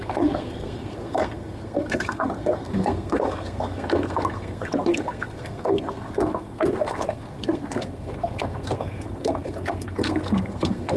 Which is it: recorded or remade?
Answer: remade